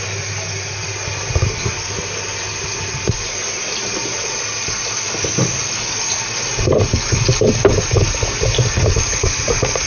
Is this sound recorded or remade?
recorded